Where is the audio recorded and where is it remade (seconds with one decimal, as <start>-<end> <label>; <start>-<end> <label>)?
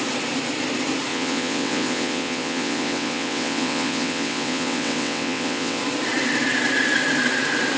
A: 0.0-1.1 recorded; 1.1-5.8 remade; 5.8-7.8 recorded